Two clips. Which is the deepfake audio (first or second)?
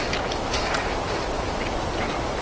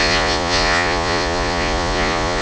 second